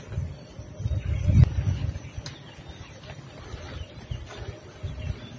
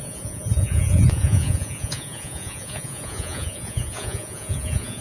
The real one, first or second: first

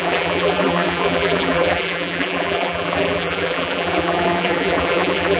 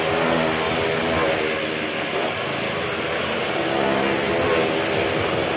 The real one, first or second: second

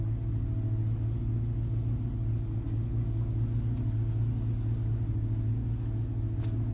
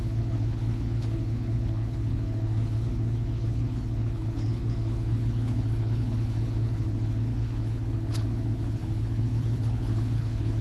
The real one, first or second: first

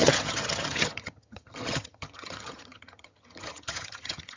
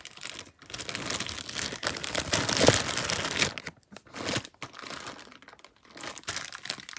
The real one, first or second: second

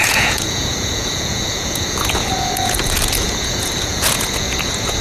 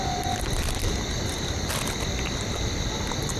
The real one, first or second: second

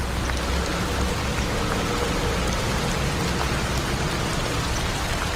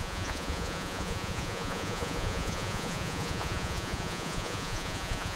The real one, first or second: first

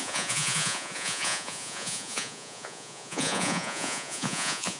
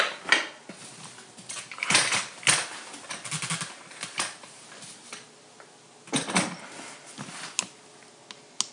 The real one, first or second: second